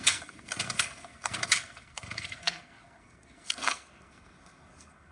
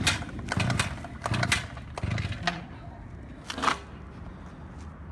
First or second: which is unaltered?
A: second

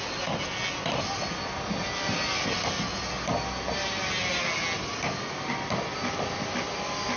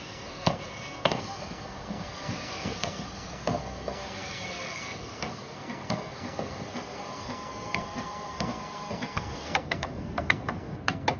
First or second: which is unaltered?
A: first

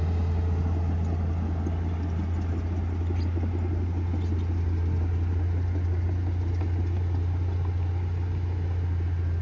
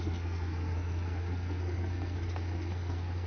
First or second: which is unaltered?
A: first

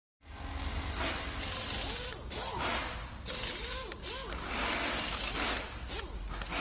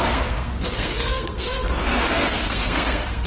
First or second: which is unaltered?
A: first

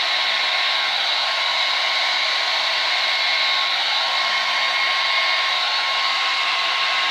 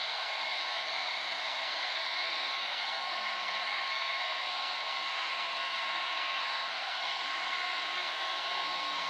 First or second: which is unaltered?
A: first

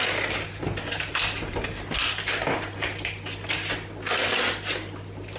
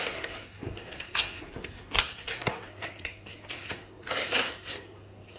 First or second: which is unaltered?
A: first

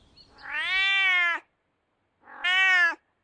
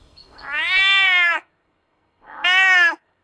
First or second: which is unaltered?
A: first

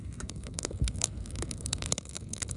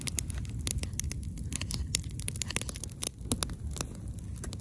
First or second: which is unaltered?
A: second